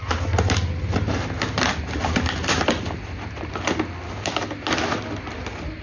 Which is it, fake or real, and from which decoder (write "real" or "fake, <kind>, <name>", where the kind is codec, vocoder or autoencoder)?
real